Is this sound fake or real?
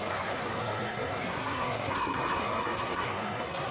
fake